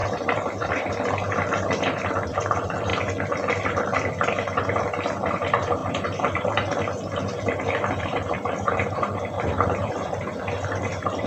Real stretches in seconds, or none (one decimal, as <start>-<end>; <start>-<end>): 2.9-5.3